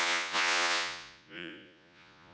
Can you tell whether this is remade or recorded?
remade